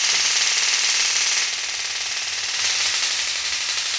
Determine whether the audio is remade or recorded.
recorded